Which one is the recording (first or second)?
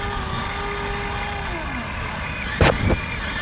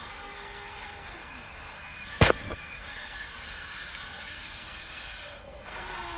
first